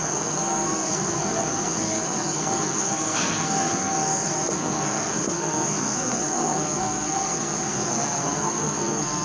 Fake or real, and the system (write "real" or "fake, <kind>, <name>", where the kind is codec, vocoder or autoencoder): fake, codec, SNAC